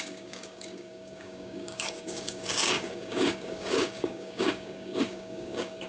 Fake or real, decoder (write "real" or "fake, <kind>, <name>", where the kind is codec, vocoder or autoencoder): fake, codec, DAC